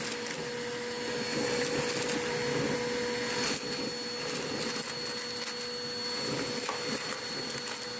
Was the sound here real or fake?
real